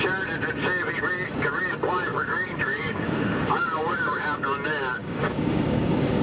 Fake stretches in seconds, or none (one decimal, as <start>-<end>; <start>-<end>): 2.1-4.3; 5.0-6.2